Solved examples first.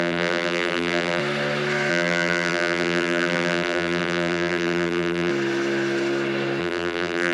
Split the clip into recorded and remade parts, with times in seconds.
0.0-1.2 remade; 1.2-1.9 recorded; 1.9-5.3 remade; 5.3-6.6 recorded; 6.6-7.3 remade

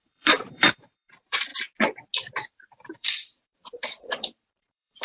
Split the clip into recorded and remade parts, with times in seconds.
0.0-1.5 remade; 1.5-2.5 recorded; 2.5-5.0 remade

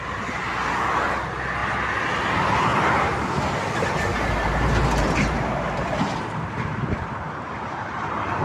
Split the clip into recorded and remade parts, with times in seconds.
0.0-2.7 recorded; 2.7-3.5 remade; 3.5-4.1 recorded; 4.1-8.4 remade

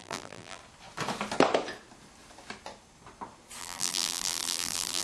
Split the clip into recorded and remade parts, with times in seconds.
0.0-0.6 remade; 0.6-3.6 recorded; 3.6-5.0 remade

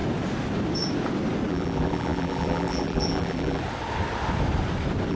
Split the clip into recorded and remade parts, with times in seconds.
0.0-1.5 recorded; 1.5-3.6 remade; 3.6-5.1 recorded